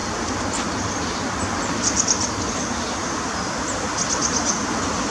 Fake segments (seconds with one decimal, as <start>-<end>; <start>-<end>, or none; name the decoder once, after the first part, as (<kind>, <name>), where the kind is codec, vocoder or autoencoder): 0.0-3.1 (vocoder, BigVGAN v2)